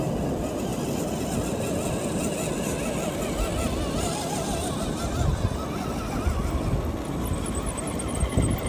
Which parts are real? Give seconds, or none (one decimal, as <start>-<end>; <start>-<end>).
0.0-8.7